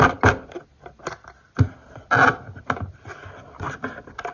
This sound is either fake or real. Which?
real